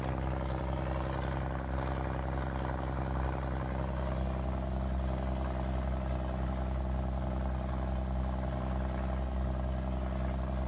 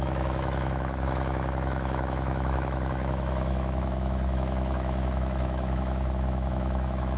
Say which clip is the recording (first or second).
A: first